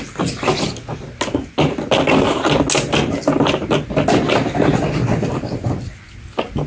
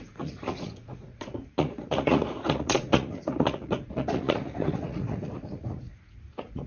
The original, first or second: first